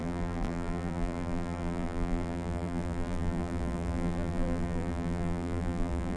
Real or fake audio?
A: fake